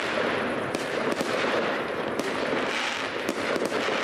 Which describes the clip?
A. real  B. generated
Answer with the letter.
A